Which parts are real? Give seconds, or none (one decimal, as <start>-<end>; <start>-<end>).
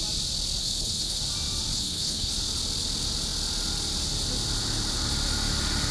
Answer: 0.0-0.6; 1.2-1.7; 2.3-5.9